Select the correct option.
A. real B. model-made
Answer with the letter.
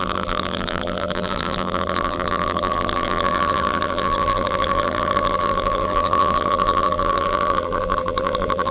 B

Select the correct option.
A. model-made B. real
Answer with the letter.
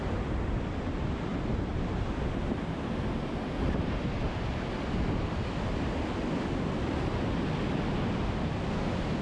B